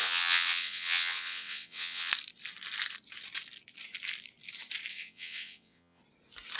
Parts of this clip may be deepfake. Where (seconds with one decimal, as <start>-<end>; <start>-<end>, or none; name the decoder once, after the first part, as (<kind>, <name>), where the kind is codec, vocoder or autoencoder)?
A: 0.0-2.1 (vocoder, WaveNeXt); 4.9-6.0